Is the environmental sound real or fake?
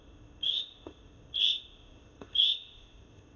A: fake